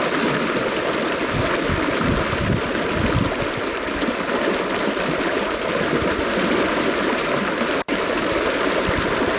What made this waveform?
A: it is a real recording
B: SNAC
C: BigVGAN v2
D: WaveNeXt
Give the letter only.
A